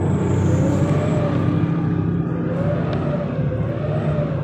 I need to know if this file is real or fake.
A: real